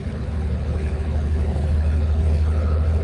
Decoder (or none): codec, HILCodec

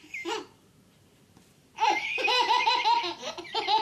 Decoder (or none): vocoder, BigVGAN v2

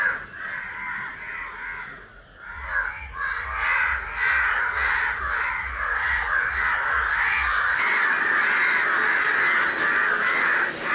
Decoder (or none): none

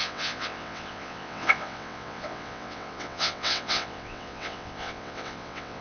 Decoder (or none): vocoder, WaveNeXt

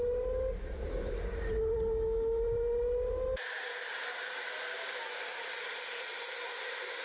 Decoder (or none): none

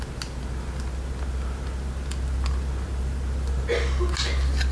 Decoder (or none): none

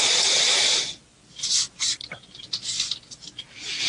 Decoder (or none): none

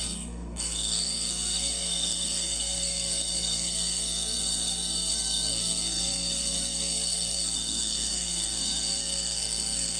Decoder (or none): codec, SNAC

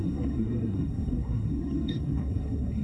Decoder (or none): codec, SNAC